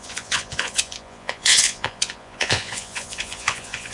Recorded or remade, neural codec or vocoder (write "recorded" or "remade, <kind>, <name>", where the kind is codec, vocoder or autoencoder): remade, vocoder, Vocos